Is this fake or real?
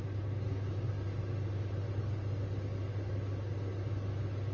real